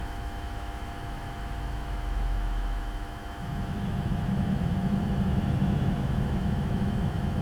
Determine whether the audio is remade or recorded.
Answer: remade